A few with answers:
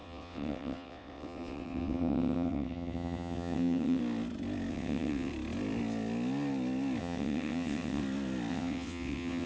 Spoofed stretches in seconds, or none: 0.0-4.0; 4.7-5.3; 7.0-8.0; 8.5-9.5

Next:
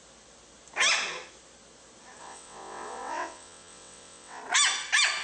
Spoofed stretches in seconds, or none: 2.2-4.4

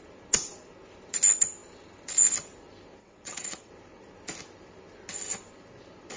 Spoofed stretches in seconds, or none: 3.0-3.7

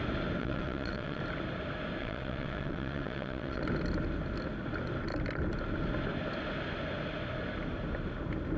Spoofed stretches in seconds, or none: 0.4-1.2; 2.0-3.6

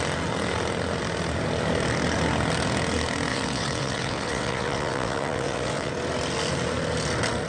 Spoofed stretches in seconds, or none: 3.3-5.9